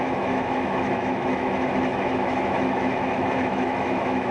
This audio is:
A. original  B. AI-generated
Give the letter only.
B